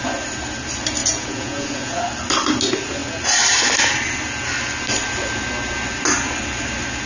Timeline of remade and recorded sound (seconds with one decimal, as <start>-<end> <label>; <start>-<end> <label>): 0.0-1.0 recorded; 1.0-2.0 remade; 2.0-7.1 recorded